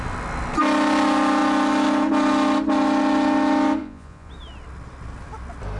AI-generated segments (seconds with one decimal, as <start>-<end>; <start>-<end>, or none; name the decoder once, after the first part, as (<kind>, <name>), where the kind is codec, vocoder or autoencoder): 3.8-4.3 (vocoder, Vocos)